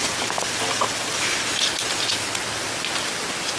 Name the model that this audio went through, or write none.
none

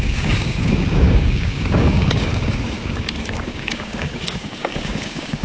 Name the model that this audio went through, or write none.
codec, DAC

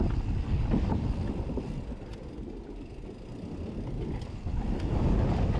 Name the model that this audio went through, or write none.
none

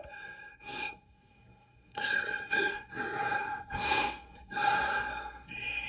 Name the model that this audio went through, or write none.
codec, SNAC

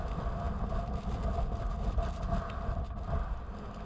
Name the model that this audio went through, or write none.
none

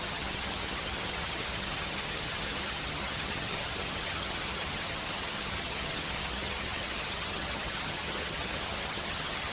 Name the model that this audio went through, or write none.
vocoder, HiFi-GAN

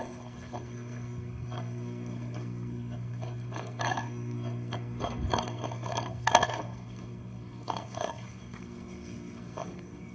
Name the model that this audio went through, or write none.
codec, SNAC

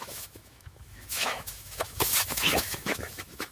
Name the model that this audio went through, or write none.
autoencoder, DAC-VAE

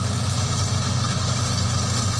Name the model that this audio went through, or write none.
none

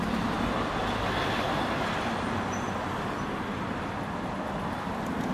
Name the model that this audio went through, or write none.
none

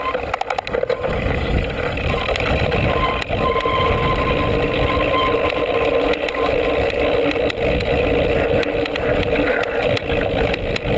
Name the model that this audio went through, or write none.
none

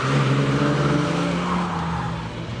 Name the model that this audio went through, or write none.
none